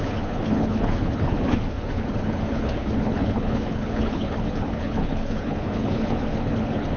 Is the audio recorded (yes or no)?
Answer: no